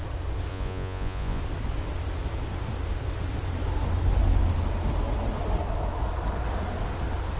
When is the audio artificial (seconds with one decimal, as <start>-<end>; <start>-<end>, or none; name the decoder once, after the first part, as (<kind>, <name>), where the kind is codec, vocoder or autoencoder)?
0.5-1.4 (vocoder, Vocos)